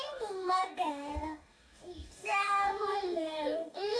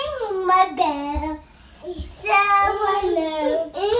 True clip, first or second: second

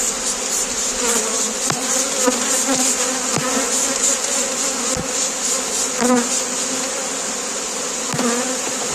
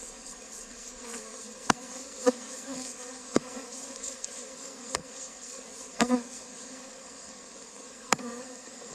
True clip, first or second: first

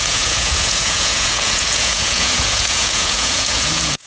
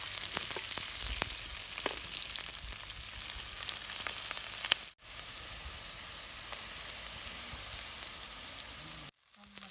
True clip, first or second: second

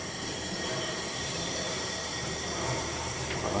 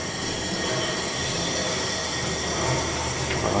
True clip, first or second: second